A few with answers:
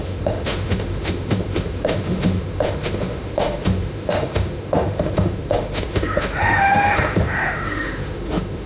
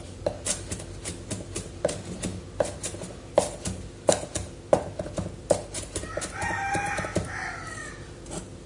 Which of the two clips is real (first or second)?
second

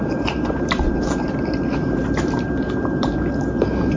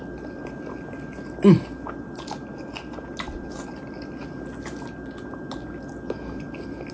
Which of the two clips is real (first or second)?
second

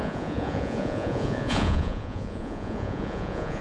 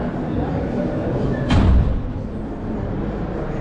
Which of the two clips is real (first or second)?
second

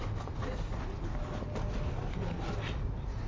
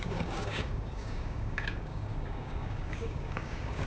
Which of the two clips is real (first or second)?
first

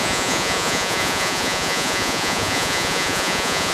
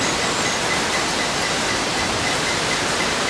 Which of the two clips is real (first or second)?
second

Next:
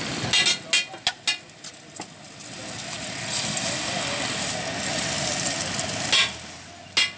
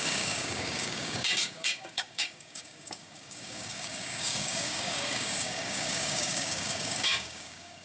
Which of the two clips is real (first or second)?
first